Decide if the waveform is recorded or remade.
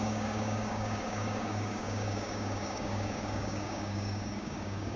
remade